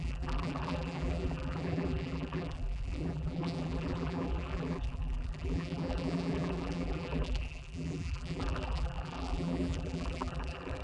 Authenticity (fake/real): fake